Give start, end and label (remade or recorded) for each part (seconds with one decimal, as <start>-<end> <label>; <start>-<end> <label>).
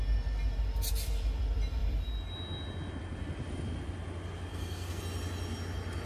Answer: 0.0-4.5 recorded; 4.5-5.0 remade; 5.0-6.0 recorded